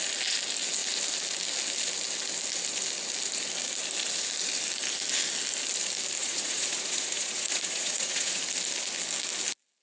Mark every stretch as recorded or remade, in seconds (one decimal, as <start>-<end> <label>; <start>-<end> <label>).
0.0-6.2 recorded; 6.2-8.4 remade; 8.4-9.8 recorded

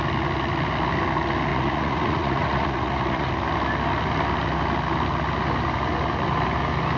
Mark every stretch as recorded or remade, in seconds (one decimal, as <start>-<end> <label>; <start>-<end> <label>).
0.0-1.5 recorded; 1.5-3.3 remade; 3.3-7.0 recorded

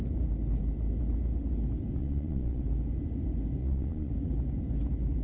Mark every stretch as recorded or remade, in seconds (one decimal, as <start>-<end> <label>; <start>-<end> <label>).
0.0-2.0 recorded; 2.0-2.6 remade; 2.6-3.6 recorded; 3.6-4.1 remade; 4.1-5.2 recorded

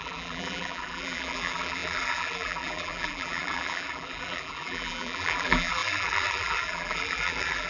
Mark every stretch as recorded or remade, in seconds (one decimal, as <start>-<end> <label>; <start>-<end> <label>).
0.0-7.7 remade

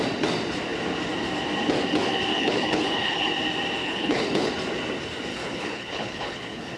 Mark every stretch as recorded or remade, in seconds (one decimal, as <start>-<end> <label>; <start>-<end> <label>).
0.0-2.3 recorded; 2.3-3.3 remade; 3.3-3.8 recorded; 3.8-4.5 remade; 4.5-5.3 recorded; 5.3-6.8 remade